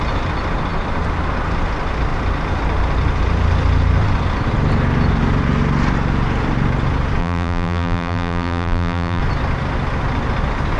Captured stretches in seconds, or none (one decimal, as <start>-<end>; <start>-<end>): 0.0-7.2; 9.2-10.8